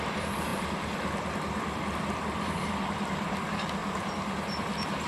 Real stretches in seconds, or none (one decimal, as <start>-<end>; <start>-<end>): none